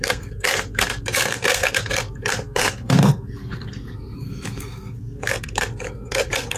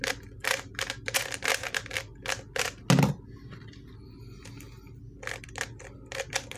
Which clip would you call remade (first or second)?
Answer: first